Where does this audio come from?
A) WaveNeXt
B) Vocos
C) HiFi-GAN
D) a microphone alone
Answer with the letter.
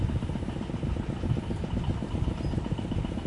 D